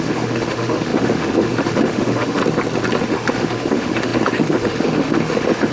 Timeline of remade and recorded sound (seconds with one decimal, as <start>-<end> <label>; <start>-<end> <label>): 0.0-2.4 remade; 2.4-3.0 recorded; 3.0-5.7 remade